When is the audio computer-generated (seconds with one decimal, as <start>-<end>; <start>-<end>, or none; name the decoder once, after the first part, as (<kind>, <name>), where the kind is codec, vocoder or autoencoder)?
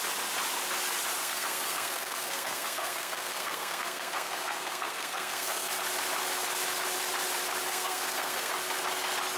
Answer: 1.2-5.7 (codec, SNAC); 7.7-8.5